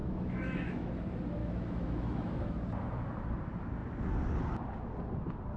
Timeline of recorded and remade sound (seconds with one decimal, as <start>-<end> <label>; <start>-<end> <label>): 0.0-0.9 remade; 0.9-1.4 recorded; 1.4-2.5 remade; 2.5-5.6 recorded